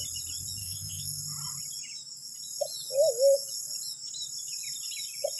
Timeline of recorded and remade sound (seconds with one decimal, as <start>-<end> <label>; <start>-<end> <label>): 0.0-0.6 recorded; 0.6-1.2 remade; 1.2-5.4 recorded